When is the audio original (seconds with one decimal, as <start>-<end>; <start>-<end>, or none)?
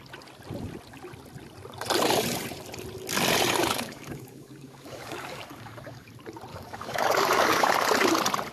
0.0-3.6; 6.1-6.5; 7.7-8.5